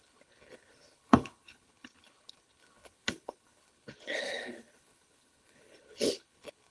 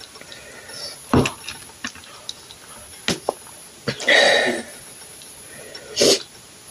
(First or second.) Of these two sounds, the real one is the second